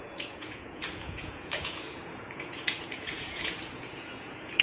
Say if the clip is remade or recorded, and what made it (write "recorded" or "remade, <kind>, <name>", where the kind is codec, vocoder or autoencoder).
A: remade, vocoder, Vocos